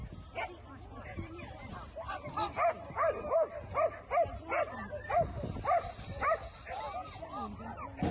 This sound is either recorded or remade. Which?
recorded